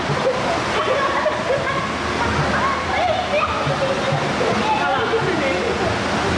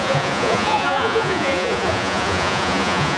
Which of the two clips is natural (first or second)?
first